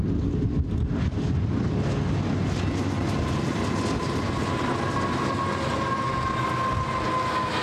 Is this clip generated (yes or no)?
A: no